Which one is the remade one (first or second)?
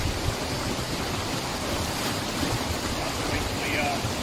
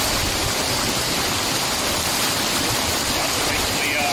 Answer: first